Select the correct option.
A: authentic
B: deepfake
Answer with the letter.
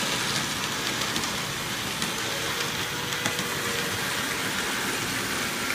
A